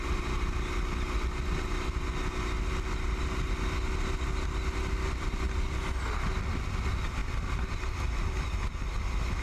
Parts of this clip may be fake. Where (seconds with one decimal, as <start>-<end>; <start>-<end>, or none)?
none